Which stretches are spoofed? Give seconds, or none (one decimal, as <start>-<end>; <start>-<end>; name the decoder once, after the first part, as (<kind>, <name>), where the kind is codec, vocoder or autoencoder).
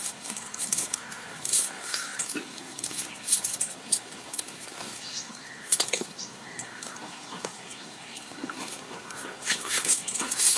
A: 0.0-10.6 (codec, SNAC)